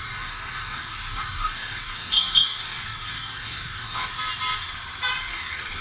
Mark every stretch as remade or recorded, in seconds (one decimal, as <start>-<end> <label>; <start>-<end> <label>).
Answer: 0.0-4.1 remade; 4.1-5.3 recorded; 5.3-5.8 remade